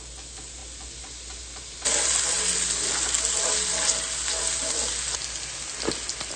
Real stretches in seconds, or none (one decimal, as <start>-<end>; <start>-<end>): 0.0-6.4